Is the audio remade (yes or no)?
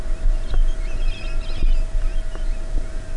no